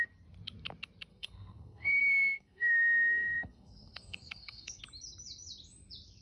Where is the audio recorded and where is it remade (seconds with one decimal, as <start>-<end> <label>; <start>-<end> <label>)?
0.0-1.1 recorded; 1.1-4.8 remade; 4.8-6.2 recorded